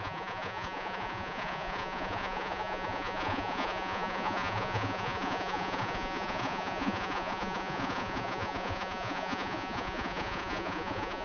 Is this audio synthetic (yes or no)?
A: yes